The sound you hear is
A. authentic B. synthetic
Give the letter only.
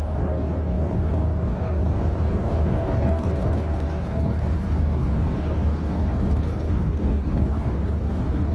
B